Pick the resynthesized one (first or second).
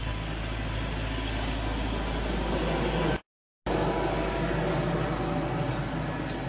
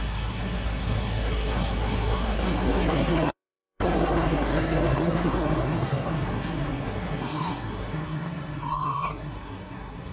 second